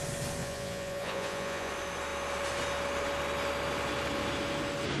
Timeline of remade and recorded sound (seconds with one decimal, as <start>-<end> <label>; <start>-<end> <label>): 0.0-0.4 recorded; 0.4-1.7 remade; 1.7-5.0 recorded